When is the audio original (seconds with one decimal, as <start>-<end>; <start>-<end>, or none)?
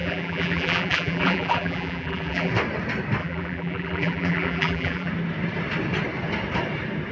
2.5-3.2; 5.1-7.1